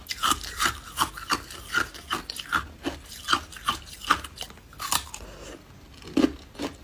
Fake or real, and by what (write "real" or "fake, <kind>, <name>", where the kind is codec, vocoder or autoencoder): real